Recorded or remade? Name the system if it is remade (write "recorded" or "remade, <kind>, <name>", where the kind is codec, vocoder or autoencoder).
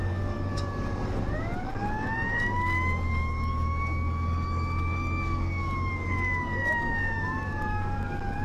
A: remade, codec, DAC